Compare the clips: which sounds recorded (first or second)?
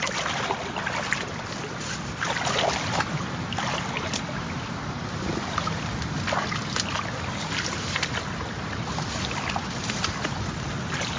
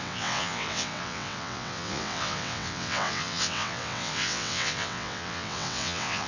first